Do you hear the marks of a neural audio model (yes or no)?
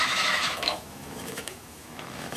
yes